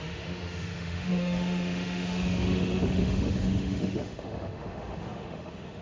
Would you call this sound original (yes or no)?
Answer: no